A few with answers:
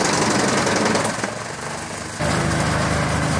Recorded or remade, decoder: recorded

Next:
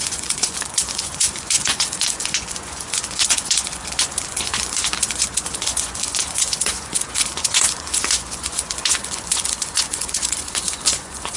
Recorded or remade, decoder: remade, vocoder, Vocos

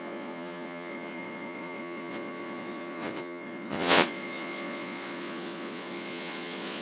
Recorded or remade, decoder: remade, vocoder, Vocos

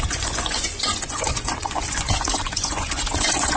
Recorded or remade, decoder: remade, vocoder, Vocos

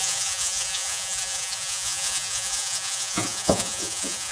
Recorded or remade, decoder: remade, vocoder, Vocos